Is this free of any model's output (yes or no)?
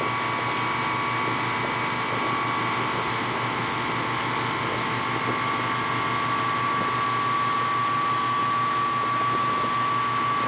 yes